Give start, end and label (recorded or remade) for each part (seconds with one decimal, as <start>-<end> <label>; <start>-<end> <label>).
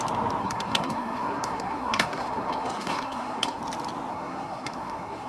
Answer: 0.0-0.4 recorded; 0.4-3.6 remade; 3.6-4.1 recorded; 4.1-5.3 remade